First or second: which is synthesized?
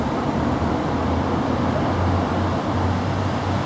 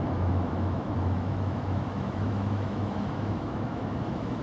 second